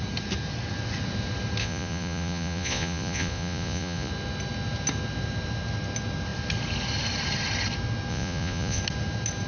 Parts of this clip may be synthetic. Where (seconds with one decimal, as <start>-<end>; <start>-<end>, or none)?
1.6-4.1; 8.1-8.8